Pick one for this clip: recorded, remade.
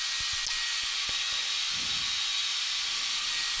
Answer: recorded